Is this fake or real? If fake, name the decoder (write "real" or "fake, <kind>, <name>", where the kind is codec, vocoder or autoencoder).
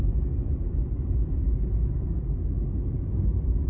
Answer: real